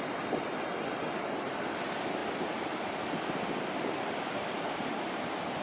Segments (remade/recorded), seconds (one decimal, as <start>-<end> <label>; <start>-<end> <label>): 0.0-5.6 recorded

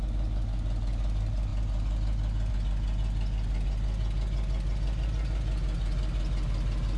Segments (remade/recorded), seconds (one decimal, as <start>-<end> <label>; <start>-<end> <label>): 0.0-7.0 recorded

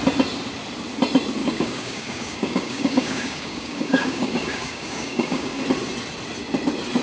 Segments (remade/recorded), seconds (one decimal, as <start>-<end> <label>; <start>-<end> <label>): 0.0-1.4 recorded; 1.4-5.6 remade; 5.6-7.0 recorded

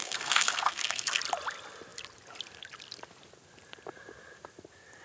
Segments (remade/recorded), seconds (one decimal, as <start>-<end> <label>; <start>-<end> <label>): 0.0-1.2 remade; 1.2-5.0 recorded

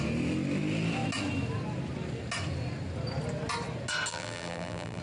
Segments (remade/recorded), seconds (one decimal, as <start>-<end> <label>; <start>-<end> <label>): 0.0-4.1 recorded; 4.1-5.0 remade

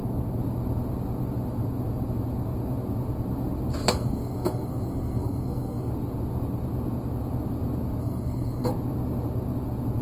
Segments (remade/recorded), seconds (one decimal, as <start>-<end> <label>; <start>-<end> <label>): 0.0-3.8 recorded; 3.8-5.9 remade; 5.9-8.0 recorded; 8.0-8.7 remade; 8.7-10.0 recorded

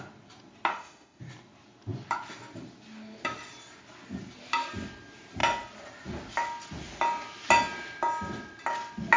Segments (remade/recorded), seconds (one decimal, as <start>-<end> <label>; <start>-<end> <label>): 0.0-0.7 recorded; 0.7-1.2 remade; 1.2-9.2 recorded